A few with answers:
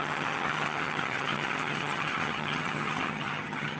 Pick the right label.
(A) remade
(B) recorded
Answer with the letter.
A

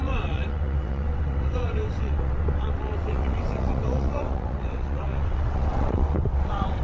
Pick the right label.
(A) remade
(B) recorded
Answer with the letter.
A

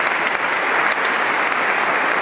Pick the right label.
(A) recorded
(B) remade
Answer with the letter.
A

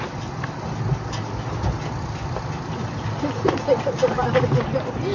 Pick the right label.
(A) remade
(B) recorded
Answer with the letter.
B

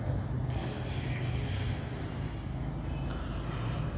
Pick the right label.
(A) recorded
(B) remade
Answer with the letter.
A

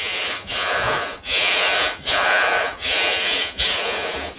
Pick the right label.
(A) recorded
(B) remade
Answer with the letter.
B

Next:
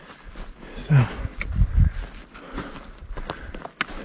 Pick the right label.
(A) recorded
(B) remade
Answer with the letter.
A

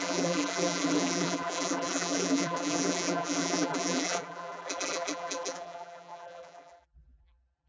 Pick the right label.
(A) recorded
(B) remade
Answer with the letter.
B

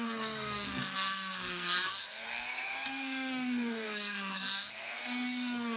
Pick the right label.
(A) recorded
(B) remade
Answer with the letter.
B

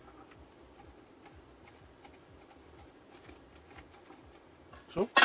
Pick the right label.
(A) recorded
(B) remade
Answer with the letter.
A